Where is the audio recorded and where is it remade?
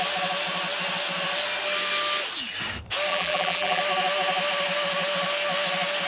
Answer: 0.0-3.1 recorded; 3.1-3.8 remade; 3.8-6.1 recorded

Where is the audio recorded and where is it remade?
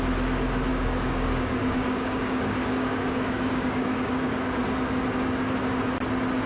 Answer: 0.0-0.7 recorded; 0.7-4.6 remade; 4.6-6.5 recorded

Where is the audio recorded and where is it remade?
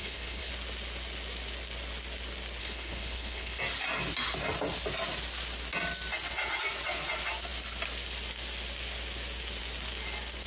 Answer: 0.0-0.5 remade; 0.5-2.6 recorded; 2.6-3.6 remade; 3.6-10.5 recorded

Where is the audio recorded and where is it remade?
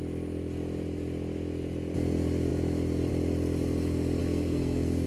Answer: 0.0-4.2 recorded; 4.2-5.1 remade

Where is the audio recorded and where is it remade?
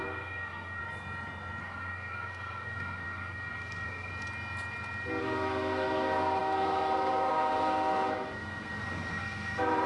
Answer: 0.0-0.8 remade; 0.8-1.6 recorded; 1.6-4.1 remade; 4.1-5.2 recorded; 5.2-9.9 remade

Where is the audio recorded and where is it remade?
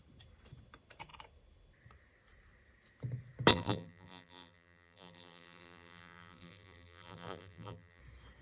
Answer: 0.0-3.5 recorded; 3.5-8.0 remade; 8.0-8.4 recorded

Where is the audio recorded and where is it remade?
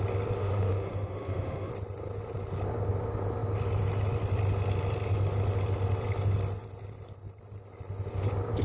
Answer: 0.0-0.4 recorded; 0.4-1.7 remade; 1.7-8.6 recorded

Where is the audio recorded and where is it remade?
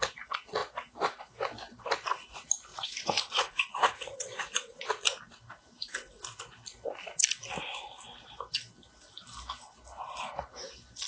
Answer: 0.0-2.7 recorded; 2.7-4.9 remade; 4.9-11.1 recorded